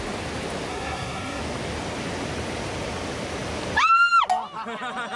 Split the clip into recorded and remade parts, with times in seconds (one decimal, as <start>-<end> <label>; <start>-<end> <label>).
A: 0.0-0.7 recorded; 0.7-1.4 remade; 1.4-5.2 recorded